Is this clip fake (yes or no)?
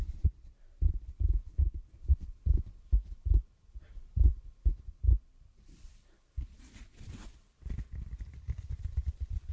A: yes